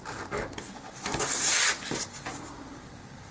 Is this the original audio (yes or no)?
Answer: yes